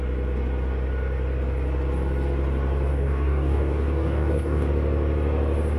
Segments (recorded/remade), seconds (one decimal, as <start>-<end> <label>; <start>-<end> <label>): 0.0-2.9 recorded; 2.9-4.7 remade; 4.7-5.8 recorded

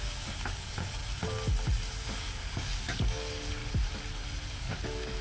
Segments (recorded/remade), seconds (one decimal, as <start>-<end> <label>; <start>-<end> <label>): 0.0-1.0 remade; 1.0-2.0 recorded; 2.0-3.6 remade; 3.6-4.5 recorded; 4.5-5.2 remade